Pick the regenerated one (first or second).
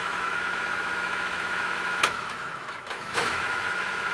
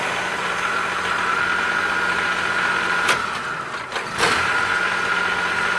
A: first